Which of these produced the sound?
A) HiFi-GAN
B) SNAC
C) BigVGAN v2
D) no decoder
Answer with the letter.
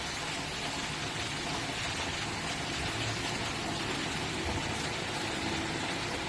D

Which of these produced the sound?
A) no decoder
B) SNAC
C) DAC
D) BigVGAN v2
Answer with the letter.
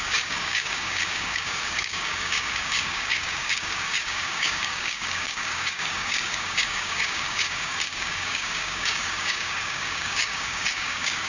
C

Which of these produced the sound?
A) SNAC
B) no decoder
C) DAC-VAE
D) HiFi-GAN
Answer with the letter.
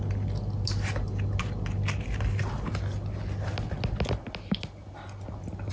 B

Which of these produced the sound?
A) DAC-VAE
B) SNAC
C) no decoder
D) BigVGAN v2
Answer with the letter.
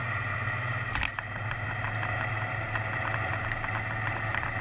C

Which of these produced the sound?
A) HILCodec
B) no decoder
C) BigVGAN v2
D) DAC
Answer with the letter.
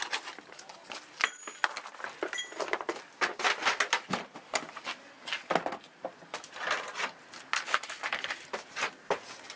B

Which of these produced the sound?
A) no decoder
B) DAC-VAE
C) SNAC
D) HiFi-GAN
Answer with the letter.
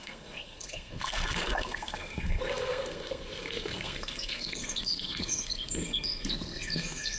C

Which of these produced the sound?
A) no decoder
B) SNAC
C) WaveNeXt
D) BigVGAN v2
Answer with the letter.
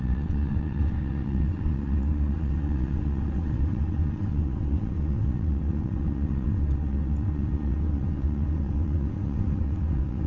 C